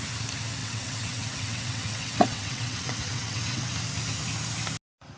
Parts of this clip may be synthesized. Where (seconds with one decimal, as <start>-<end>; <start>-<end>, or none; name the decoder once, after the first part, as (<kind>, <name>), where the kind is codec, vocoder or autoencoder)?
0.6-3.7 (vocoder, WaveNeXt)